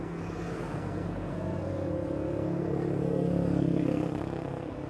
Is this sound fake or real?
fake